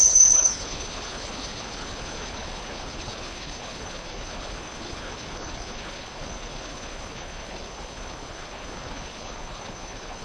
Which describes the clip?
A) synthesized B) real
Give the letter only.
A